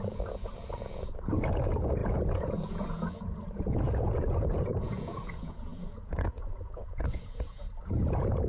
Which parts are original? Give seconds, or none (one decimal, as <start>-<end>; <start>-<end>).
none